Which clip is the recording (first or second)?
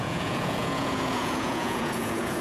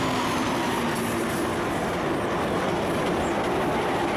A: second